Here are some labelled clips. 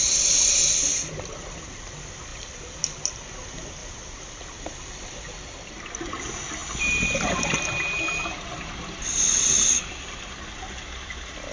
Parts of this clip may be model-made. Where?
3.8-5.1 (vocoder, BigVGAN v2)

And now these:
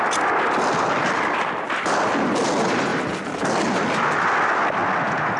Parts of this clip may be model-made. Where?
none

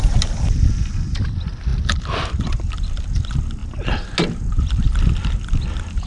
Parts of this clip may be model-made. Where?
none

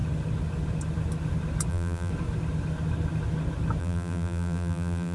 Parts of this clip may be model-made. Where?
1.7-2.1 (vocoder, BigVGAN v2); 3.8-5.1

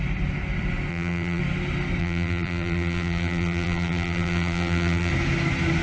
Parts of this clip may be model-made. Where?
0.9-1.4 (vocoder, BigVGAN v2); 2.0-5.1

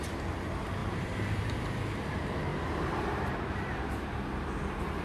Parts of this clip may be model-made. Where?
0.8-1.4 (vocoder, BigVGAN v2); 2.5-3.6

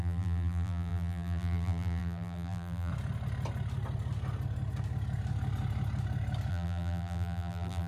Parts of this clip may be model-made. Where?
0.0-2.9 (vocoder, BigVGAN v2); 6.5-7.9

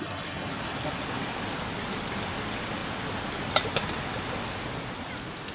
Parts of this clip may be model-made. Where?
2.8-4.4 (vocoder, BigVGAN v2)